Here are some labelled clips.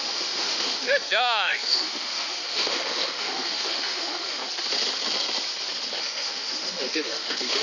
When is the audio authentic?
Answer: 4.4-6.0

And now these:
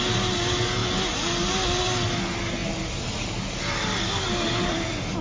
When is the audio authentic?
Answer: 0.0-5.2

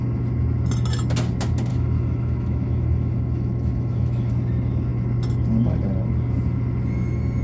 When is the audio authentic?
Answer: 0.0-1.7; 4.3-7.4